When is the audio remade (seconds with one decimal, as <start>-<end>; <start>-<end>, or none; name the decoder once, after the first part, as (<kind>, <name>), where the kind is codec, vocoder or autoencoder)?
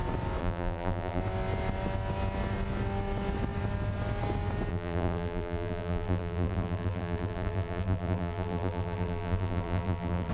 0.4-1.2 (vocoder, BigVGAN v2); 4.7-10.3